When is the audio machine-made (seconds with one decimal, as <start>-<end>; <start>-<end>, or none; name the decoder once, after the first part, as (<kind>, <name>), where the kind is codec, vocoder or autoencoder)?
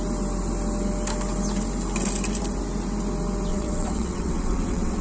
3.5-5.0 (vocoder, WaveNeXt)